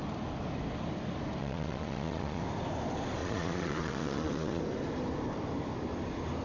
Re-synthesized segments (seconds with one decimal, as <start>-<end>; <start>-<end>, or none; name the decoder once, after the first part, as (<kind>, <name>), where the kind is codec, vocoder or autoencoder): 1.4-2.4 (vocoder, Vocos); 3.2-4.6